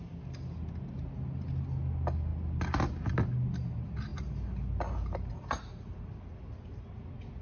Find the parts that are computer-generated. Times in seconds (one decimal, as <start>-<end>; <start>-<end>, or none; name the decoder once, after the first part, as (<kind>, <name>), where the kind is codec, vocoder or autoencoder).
none